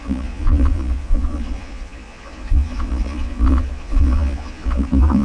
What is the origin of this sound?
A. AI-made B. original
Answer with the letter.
A